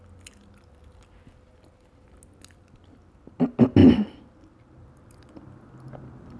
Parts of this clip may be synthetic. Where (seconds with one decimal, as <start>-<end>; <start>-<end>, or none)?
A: none